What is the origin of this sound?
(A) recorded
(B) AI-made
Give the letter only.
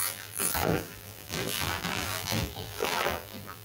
B